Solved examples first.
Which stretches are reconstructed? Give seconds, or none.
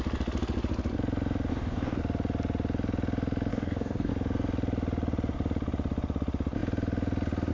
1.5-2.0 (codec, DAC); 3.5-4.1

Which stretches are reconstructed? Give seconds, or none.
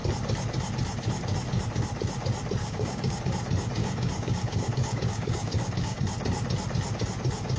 2.6-3.2 (codec, DAC); 3.8-6.0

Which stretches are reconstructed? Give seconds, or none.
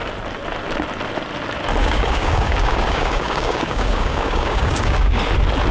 1.8-5.2 (codec, DAC)